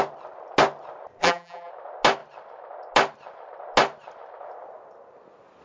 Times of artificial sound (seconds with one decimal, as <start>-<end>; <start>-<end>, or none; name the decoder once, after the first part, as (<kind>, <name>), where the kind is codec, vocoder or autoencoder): 1.2-1.7 (vocoder, BigVGAN v2)